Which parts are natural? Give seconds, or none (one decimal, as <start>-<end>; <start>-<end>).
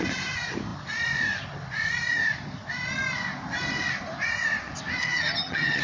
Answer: 0.0-5.0